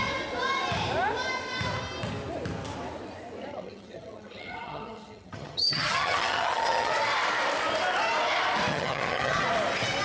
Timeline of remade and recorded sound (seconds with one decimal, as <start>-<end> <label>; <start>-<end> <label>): 0.0-3.5 recorded; 3.5-6.9 remade; 6.9-8.7 recorded; 8.7-9.4 remade; 9.4-10.0 recorded